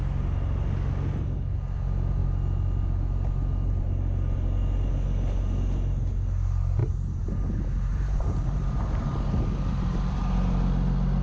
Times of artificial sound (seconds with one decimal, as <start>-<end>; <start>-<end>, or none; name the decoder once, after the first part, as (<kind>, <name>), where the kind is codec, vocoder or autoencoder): 6.8-7.5 (vocoder, BigVGAN v2); 7.9-9.1